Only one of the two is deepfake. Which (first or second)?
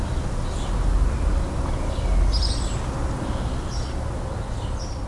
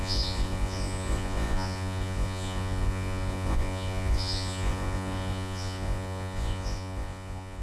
second